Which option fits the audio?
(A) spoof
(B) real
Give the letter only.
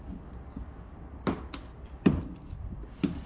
B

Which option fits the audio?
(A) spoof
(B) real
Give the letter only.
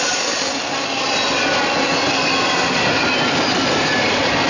B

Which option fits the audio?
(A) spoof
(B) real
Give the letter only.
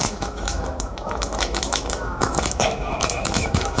A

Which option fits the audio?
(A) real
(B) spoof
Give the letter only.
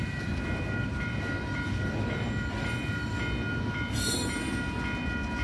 A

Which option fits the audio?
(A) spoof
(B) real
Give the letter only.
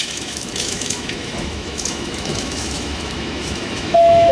A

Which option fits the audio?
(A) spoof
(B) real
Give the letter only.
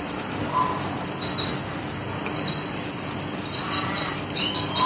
B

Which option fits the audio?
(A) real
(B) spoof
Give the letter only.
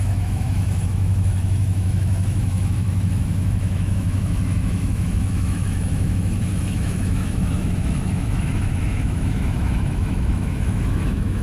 B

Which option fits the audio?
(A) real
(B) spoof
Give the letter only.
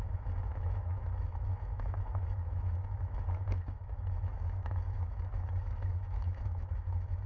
B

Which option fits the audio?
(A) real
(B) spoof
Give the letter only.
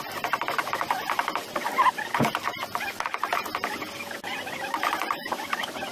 A